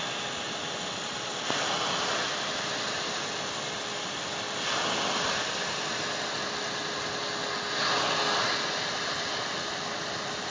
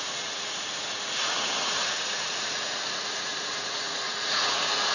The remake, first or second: second